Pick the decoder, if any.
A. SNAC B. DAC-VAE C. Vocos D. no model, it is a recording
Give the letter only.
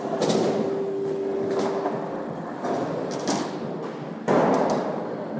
D